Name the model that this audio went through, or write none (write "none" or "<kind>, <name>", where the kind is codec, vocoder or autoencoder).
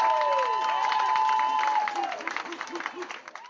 none